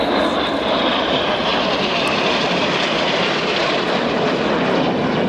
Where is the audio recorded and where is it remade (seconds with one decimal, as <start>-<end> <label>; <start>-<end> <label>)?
0.0-1.5 recorded; 1.5-3.8 remade; 3.8-5.3 recorded